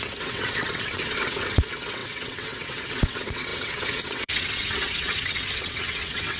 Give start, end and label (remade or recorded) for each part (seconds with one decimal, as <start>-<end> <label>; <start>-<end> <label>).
0.0-6.4 remade